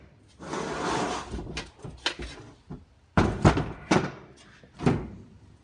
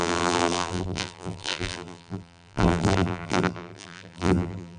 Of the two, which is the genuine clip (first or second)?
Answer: first